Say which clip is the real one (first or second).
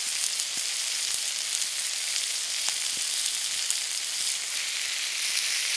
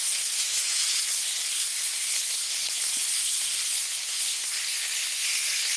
first